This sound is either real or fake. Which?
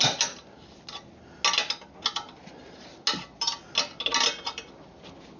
real